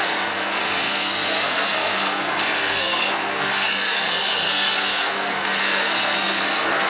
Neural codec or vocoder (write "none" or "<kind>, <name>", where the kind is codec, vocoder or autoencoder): codec, SNAC